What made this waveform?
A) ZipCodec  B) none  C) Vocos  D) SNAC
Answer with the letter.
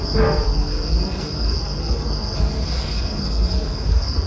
D